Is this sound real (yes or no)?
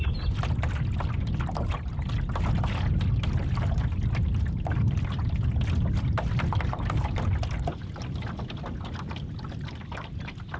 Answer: yes